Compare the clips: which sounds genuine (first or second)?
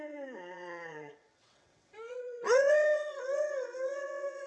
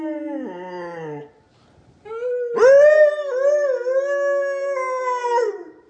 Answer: second